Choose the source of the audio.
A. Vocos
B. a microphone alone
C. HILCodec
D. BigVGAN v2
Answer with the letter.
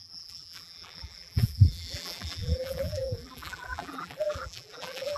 D